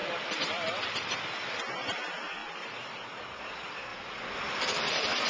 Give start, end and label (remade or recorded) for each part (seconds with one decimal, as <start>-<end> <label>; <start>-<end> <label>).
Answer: 0.0-1.6 remade; 1.6-3.9 recorded; 3.9-4.8 remade; 4.8-5.3 recorded